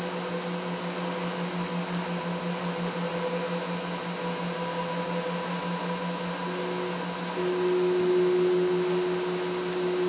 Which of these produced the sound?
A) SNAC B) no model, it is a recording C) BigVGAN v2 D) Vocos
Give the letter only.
B